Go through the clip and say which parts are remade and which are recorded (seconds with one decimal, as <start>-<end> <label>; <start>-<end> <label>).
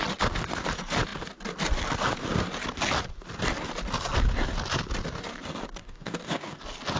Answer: 0.0-5.8 recorded; 5.8-6.6 remade; 6.6-7.0 recorded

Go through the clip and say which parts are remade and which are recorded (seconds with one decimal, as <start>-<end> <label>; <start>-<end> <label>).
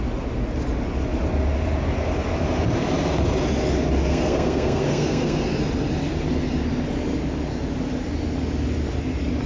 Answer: 0.0-4.1 recorded; 4.1-5.4 remade; 5.4-9.5 recorded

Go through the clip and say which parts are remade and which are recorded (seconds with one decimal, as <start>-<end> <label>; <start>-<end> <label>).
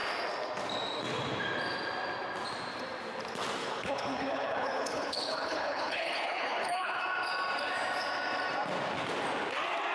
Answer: 0.0-3.6 recorded; 3.6-7.0 remade; 7.0-9.9 recorded